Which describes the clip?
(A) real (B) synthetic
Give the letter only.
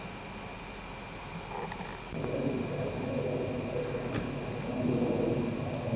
A